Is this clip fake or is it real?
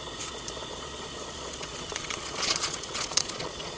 fake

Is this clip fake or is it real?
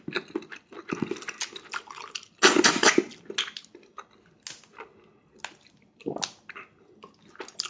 real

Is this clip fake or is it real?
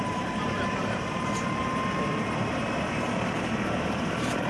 fake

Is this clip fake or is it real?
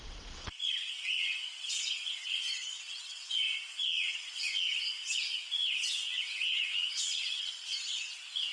fake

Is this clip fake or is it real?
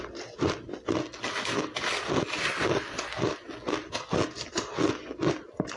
real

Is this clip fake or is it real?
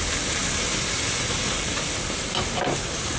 real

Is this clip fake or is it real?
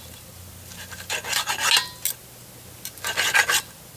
real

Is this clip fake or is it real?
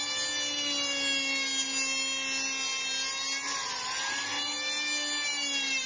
real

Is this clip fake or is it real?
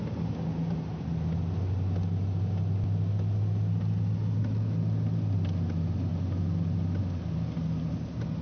real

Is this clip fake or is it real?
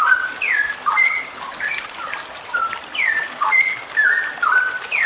real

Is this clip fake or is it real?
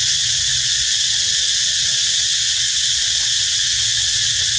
fake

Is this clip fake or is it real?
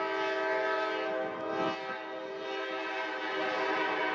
real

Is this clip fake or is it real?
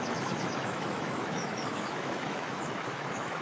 fake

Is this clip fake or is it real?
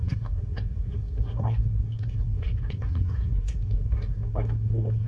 fake